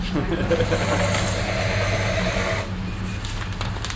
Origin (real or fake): real